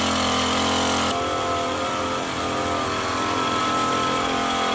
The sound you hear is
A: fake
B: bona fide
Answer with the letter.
B